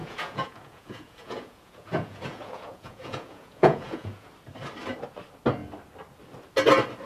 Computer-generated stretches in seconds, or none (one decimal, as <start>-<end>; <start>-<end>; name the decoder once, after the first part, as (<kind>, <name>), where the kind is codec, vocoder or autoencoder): 0.0-4.3 (vocoder, Vocos)